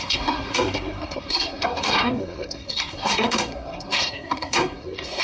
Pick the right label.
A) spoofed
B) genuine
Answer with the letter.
A